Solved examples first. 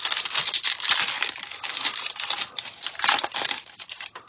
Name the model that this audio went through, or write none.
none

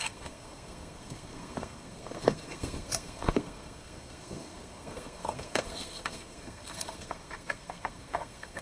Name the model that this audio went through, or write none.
codec, SNAC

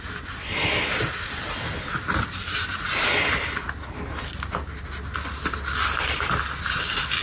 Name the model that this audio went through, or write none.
none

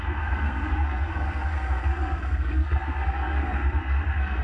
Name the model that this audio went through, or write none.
codec, SNAC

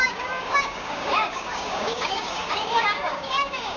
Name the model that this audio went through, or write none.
codec, DAC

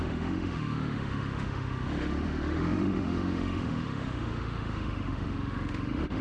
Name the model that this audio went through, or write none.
autoencoder, DAC-VAE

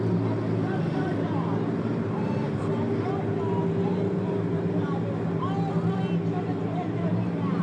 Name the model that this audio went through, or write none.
none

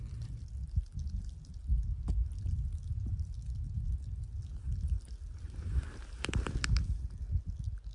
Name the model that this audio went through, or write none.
none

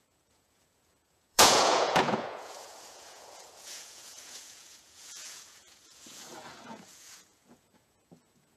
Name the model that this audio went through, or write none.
vocoder, Vocos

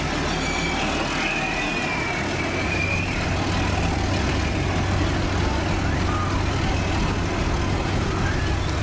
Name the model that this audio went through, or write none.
none